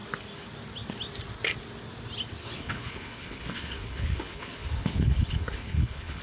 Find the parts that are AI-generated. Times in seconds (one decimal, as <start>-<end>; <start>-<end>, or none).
2.4-6.2